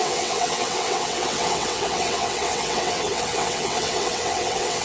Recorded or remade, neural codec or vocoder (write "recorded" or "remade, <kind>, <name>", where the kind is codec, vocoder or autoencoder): remade, vocoder, WaveNeXt